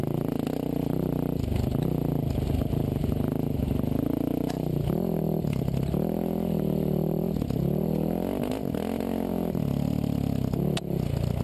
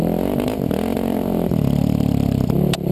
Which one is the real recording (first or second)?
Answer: first